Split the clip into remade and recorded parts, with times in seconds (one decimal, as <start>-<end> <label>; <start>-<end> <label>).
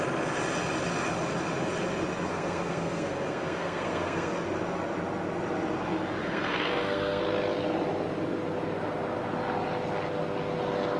0.0-2.3 recorded; 2.3-4.3 remade; 4.3-6.2 recorded; 6.2-7.2 remade; 7.2-11.0 recorded